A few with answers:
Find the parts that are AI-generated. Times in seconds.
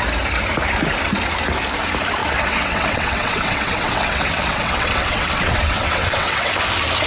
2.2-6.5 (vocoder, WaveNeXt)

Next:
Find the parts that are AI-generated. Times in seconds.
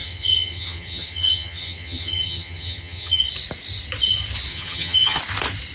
0.0-3.2 (vocoder, HiFi-GAN); 4.5-5.2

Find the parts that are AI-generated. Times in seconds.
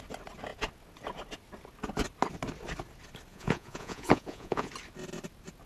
3.3-4.7 (vocoder, Vocos)